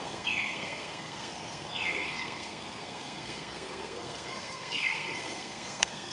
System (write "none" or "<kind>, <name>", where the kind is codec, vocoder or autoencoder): codec, SNAC